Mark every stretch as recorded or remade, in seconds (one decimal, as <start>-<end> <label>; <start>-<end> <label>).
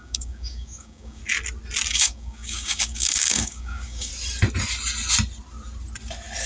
0.0-1.2 remade; 1.2-1.9 recorded; 1.9-4.1 remade; 4.1-6.5 recorded